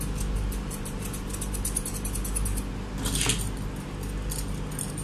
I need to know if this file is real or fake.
real